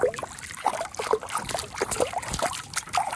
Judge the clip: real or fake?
real